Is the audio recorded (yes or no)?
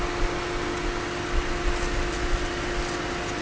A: yes